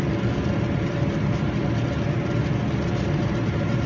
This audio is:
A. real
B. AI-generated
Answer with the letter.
A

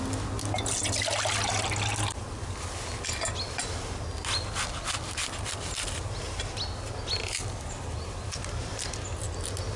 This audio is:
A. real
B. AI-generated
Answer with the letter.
A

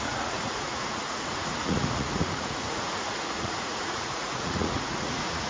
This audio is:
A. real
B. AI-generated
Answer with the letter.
B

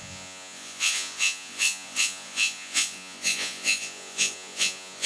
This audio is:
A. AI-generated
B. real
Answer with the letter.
A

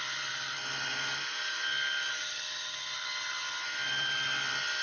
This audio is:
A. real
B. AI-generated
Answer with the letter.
A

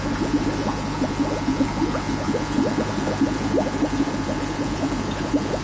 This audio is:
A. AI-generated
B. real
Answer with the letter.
A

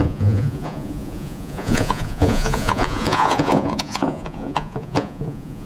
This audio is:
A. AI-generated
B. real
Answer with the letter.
A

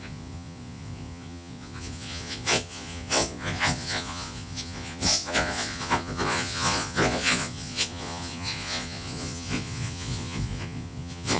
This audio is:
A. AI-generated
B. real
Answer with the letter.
A